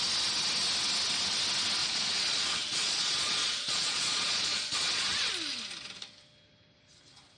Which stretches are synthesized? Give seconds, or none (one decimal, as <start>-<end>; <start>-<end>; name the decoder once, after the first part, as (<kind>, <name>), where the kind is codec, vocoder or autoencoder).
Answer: 1.8-5.3 (vocoder, Vocos)